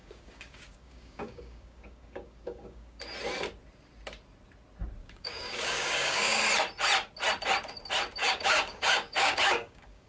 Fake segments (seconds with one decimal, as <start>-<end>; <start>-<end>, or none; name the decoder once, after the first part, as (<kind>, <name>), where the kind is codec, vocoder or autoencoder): 0.0-3.0 (codec, DAC); 5.0-6.4; 8.2-10.1